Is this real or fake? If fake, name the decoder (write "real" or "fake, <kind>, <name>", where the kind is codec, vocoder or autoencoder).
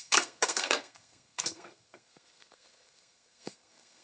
fake, codec, SNAC